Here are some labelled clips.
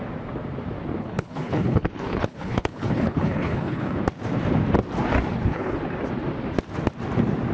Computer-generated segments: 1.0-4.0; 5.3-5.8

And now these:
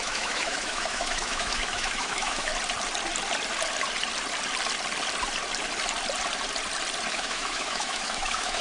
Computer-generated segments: 0.0-2.5; 7.1-8.6

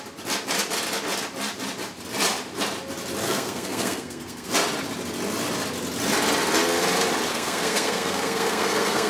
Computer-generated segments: 3.2-4.5; 7.3-9.1

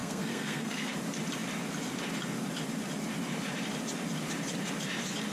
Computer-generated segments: 0.0-0.9

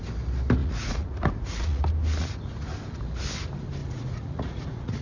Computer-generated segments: 0.6-1.8; 2.2-2.7; 3.8-5.0

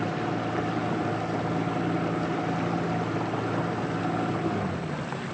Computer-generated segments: none

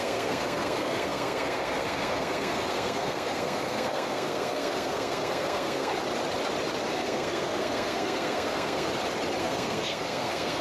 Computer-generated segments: 0.0-5.9; 6.9-8.9; 9.4-10.6